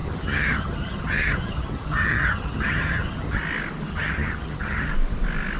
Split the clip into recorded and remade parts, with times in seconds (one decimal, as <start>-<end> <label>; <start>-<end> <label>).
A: 0.0-3.4 remade; 3.4-3.9 recorded; 3.9-4.9 remade; 4.9-5.6 recorded